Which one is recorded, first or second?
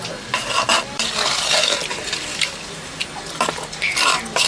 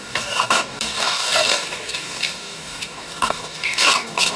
first